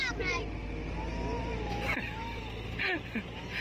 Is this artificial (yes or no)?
no